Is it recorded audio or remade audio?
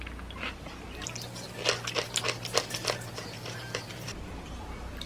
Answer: recorded